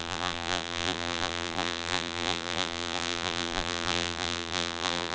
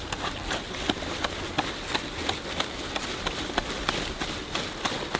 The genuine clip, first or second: second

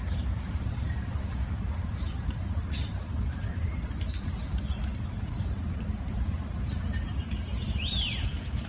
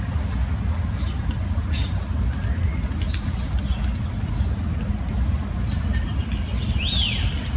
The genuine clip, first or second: second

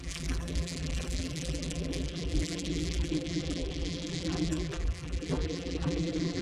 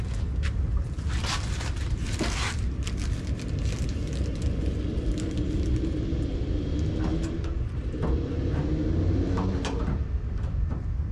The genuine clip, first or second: second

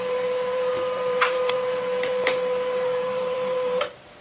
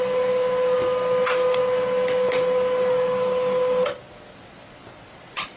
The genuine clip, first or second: second